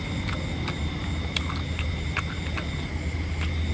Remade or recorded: recorded